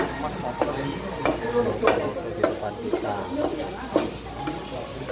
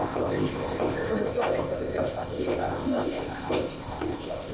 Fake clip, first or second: second